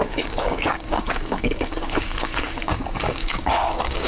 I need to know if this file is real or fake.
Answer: fake